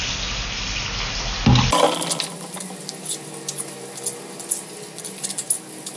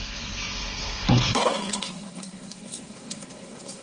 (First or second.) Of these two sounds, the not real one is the second